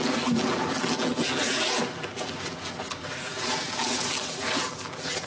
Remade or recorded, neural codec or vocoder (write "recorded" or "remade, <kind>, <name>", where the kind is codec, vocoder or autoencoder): recorded